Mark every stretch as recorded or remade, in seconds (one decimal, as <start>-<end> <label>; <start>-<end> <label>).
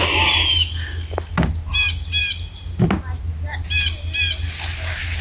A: 0.0-5.2 recorded